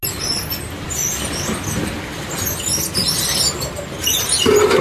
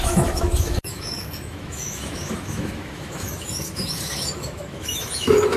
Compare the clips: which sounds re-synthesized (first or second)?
second